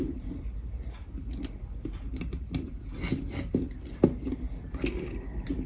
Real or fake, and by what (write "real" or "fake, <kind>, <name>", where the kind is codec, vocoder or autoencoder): real